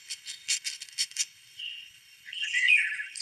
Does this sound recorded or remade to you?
remade